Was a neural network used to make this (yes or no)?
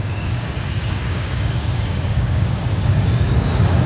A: yes